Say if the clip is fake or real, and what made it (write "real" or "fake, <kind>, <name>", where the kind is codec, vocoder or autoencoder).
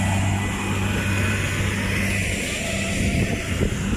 real